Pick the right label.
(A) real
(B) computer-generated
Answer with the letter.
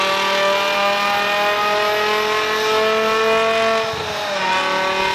A